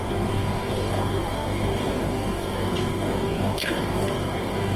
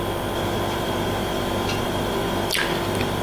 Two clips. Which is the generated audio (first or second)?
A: first